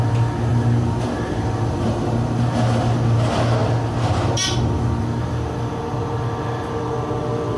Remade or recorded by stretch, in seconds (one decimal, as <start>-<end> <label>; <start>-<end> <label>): 0.0-0.5 recorded; 0.5-2.9 remade; 2.9-7.6 recorded